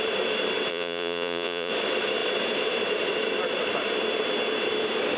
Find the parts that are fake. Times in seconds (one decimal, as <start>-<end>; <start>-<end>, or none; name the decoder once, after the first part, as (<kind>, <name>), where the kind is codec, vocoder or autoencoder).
0.7-1.7 (vocoder, Vocos)